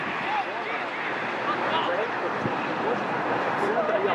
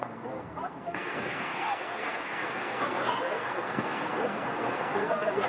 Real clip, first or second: first